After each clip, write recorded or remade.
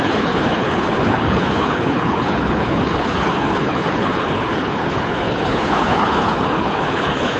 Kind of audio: remade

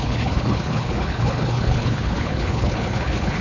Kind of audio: remade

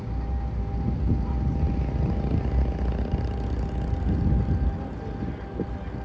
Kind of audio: recorded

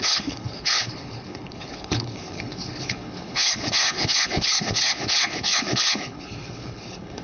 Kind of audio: remade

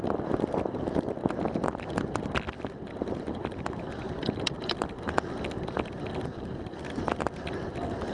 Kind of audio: recorded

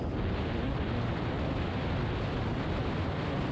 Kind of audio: recorded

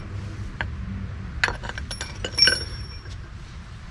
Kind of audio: recorded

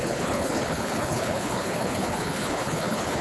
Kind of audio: remade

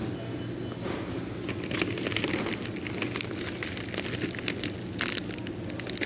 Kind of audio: recorded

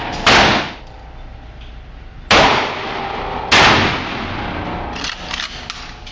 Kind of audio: recorded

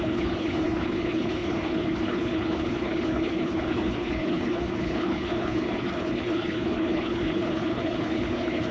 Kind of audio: remade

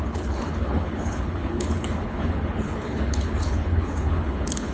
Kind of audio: remade